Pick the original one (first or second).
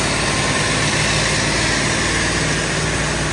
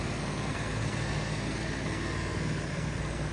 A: first